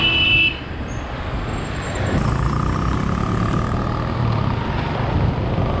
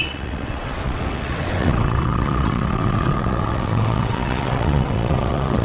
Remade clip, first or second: second